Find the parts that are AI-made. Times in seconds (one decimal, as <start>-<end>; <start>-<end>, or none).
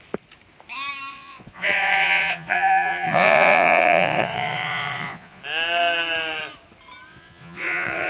1.1-5.4; 7.1-8.1